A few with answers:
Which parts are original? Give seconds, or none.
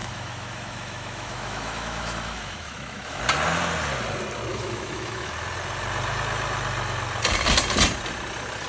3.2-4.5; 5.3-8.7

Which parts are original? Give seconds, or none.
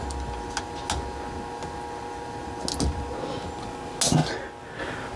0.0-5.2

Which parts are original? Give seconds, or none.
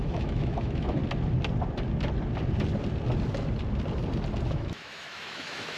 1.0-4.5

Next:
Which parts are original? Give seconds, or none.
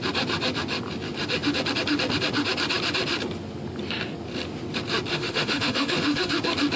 0.0-5.1; 6.3-6.8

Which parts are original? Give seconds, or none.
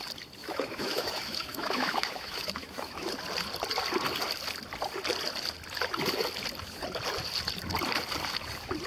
0.0-0.4; 3.1-8.9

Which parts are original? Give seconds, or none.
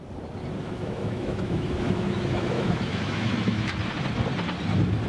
0.0-0.6; 3.7-5.1